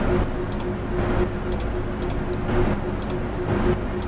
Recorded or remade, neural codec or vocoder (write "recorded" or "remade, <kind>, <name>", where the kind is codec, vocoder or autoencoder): recorded